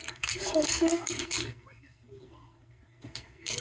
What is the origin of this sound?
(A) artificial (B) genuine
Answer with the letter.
A